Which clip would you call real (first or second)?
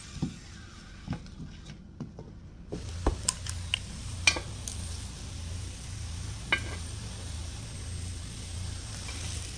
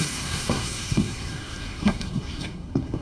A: first